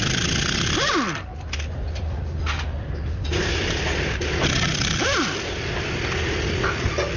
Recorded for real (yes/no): yes